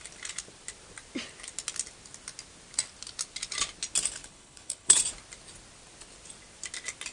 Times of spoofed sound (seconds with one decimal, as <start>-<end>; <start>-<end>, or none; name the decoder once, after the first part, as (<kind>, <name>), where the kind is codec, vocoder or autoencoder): 4.2-5.0 (codec, HILCodec)